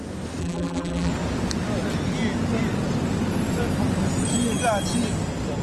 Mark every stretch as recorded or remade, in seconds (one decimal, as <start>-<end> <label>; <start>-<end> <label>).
0.0-0.4 recorded; 0.4-1.1 remade; 1.1-5.6 recorded